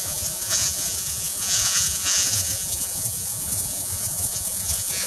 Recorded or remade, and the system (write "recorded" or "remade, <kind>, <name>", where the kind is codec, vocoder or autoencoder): remade, vocoder, Vocos